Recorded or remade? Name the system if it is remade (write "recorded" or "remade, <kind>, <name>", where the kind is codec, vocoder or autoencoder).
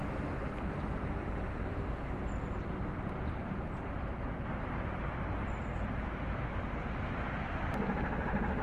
recorded